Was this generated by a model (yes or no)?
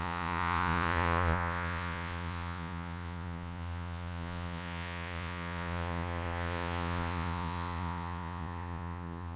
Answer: yes